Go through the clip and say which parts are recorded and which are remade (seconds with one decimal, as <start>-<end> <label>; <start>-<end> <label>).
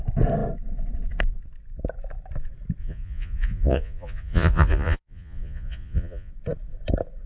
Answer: 0.0-2.8 recorded; 2.8-6.3 remade; 6.3-7.3 recorded